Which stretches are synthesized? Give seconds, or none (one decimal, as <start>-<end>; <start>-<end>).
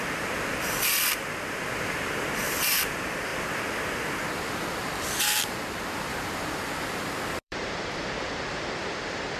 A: 0.0-9.4